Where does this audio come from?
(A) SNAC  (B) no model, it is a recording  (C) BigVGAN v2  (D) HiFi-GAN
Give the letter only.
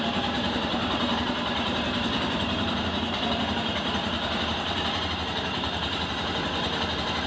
C